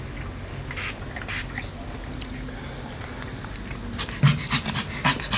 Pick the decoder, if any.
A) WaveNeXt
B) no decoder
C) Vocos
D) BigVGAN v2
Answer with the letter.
B